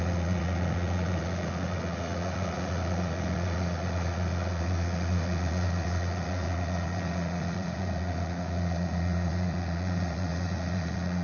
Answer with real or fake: fake